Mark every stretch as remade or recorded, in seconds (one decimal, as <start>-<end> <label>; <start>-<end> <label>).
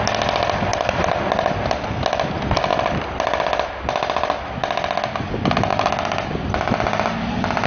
0.0-0.7 recorded; 0.7-1.2 remade; 1.2-2.7 recorded; 2.7-3.7 remade; 3.7-5.7 recorded; 5.7-6.3 remade; 6.3-7.7 recorded